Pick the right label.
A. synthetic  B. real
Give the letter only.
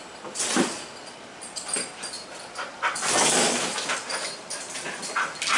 A